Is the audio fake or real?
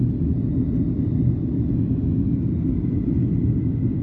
real